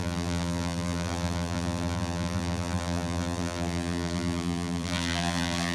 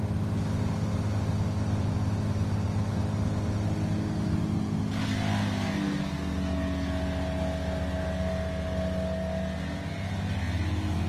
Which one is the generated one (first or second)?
first